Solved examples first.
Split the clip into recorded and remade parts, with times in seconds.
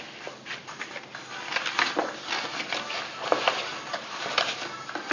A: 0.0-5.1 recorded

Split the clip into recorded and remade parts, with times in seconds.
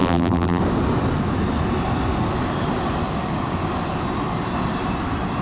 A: 0.0-0.6 remade; 0.6-5.4 recorded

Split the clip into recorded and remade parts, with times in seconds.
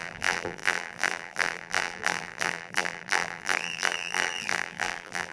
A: 0.0-5.3 remade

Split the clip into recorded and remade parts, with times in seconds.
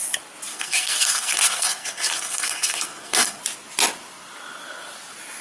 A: 0.0-0.5 recorded; 0.5-3.4 remade; 3.4-5.4 recorded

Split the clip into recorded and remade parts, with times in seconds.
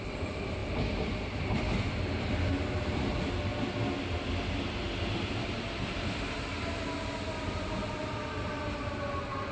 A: 0.0-9.5 recorded